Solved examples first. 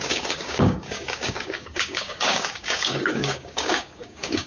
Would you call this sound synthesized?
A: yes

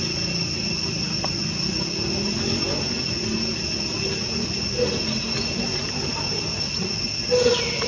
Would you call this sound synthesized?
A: no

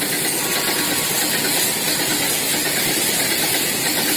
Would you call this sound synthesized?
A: no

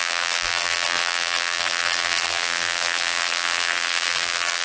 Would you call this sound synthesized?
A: yes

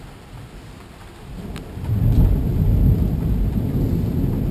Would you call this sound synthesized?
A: no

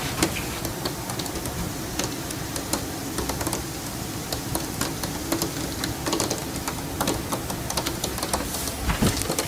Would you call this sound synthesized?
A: no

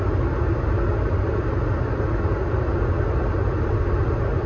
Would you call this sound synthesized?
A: no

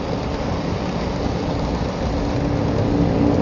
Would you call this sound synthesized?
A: no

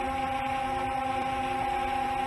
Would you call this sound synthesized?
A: no